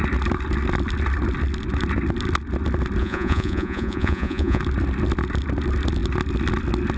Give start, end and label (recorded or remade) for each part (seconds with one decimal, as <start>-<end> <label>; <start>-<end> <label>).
0.0-3.0 recorded; 3.0-4.6 remade; 4.6-7.0 recorded